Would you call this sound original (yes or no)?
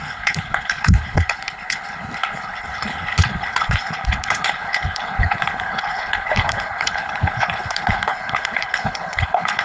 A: no